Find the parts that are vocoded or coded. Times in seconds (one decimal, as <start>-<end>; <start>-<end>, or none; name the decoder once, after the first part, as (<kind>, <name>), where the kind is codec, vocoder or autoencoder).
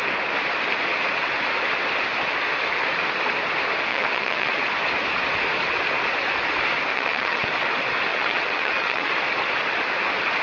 3.9-4.6 (vocoder, WaveNeXt); 6.9-7.5; 8.1-9.1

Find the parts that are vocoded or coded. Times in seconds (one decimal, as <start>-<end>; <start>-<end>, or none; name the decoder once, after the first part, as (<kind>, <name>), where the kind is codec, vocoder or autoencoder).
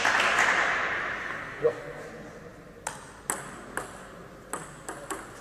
1.2-2.0 (codec, SNAC)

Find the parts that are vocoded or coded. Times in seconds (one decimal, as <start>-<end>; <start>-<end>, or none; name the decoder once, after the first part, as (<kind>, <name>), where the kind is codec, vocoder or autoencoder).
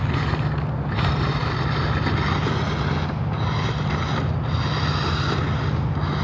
none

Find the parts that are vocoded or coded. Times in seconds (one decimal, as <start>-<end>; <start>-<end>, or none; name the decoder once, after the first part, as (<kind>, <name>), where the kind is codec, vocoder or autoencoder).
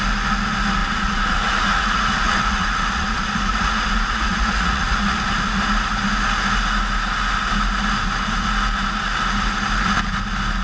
0.8-5.3 (vocoder, Vocos)